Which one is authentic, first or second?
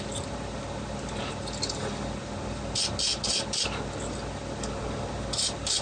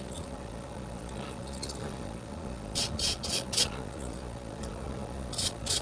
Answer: first